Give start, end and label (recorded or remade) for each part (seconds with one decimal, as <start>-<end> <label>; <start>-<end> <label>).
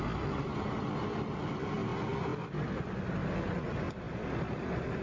0.0-5.0 recorded